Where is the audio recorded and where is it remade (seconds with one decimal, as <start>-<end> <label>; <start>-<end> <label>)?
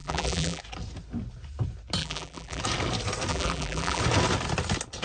0.0-0.6 remade; 0.6-2.0 recorded; 2.0-2.6 remade; 2.6-3.3 recorded; 3.3-4.0 remade; 4.0-5.0 recorded